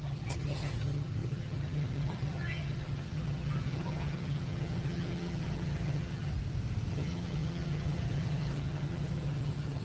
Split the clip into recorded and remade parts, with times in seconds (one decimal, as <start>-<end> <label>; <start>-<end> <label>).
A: 0.0-6.3 remade; 6.3-6.9 recorded; 6.9-9.8 remade